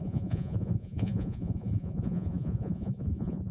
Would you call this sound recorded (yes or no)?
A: no